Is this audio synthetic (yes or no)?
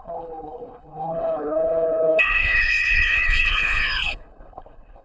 yes